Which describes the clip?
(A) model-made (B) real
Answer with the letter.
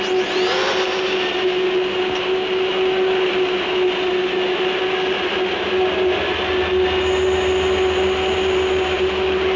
B